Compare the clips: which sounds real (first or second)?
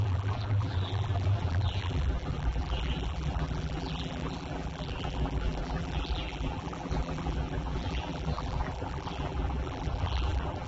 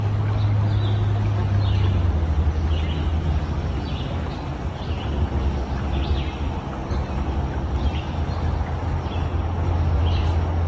second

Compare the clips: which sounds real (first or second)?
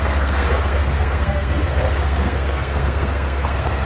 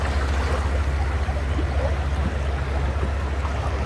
second